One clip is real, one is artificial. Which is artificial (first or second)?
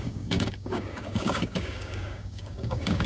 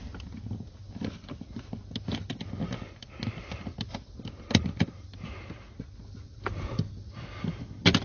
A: first